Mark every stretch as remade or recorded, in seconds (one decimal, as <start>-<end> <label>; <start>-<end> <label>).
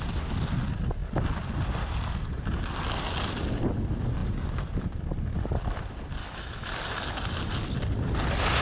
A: 0.0-6.2 recorded; 6.2-6.7 remade; 6.7-8.6 recorded